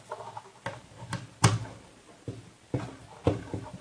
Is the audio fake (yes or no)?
no